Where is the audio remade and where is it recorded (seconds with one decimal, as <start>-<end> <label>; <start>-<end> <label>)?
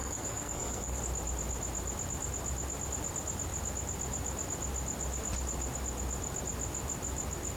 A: 0.0-1.0 remade; 1.0-7.6 recorded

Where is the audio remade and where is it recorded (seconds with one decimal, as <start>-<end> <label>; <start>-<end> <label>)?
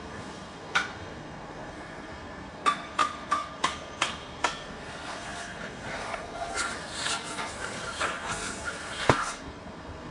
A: 0.0-10.1 remade